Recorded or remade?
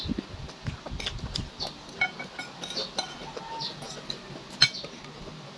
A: recorded